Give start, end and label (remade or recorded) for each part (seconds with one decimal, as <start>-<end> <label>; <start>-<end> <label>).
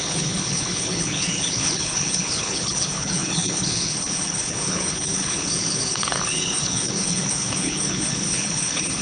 0.0-9.0 remade